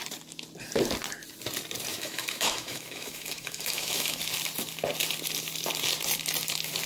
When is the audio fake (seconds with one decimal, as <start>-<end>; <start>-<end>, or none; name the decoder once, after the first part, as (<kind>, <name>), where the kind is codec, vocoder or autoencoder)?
1.9-4.2 (autoencoder, DAC-VAE)